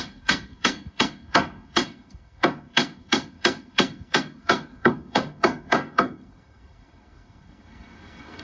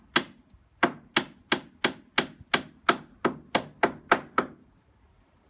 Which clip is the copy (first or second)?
first